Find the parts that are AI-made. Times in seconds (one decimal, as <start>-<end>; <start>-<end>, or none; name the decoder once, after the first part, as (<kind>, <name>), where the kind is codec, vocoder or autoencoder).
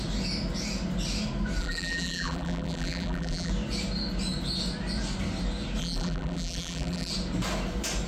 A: 1.6-3.5 (vocoder, BigVGAN v2); 5.8-7.1